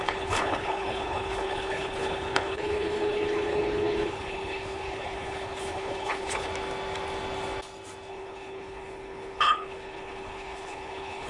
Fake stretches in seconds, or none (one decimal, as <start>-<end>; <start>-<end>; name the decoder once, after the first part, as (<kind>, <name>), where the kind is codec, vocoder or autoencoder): 0.0-6.5 (codec, HILCodec); 8.1-11.3